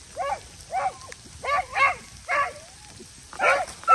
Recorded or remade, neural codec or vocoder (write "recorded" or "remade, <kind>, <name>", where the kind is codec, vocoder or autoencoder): recorded